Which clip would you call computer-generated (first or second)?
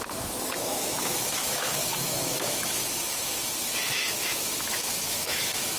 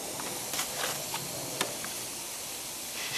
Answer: first